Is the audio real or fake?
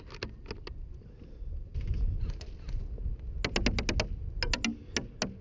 real